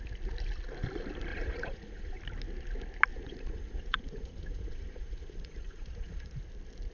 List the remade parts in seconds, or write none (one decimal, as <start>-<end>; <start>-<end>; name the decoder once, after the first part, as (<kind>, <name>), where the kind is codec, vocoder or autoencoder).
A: 1.3-2.2 (vocoder, Vocos); 3.1-6.4